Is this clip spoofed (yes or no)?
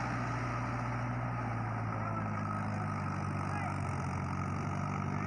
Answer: no